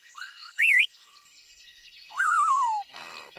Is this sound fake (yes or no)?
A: yes